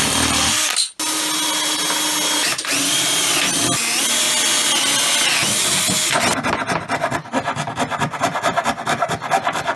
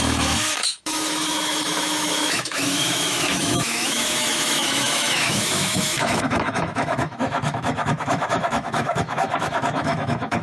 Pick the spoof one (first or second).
second